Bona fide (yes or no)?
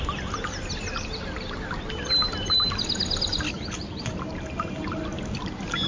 yes